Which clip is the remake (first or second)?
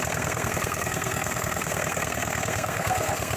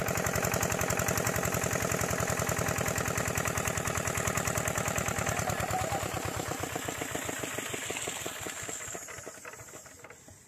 first